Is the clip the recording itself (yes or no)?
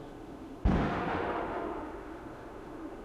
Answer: no